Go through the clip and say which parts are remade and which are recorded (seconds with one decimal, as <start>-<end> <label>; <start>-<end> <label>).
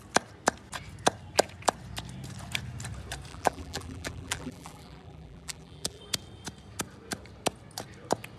0.0-3.3 recorded; 3.3-6.0 remade; 6.0-8.4 recorded